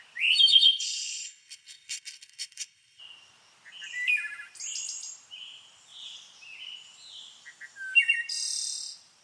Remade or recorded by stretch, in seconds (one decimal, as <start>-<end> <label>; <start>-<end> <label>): 0.0-0.5 recorded; 0.5-3.0 remade; 3.0-9.2 recorded